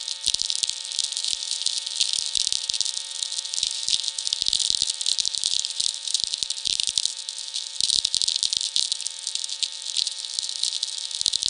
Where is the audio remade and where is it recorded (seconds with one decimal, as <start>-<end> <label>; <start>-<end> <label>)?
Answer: 0.0-5.1 recorded; 5.1-6.9 remade; 6.9-11.5 recorded